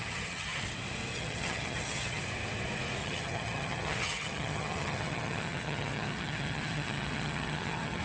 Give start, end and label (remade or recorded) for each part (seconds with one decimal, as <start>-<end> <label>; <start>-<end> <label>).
0.0-0.6 remade; 0.6-1.1 recorded; 1.1-2.2 remade; 2.2-3.0 recorded; 3.0-8.0 remade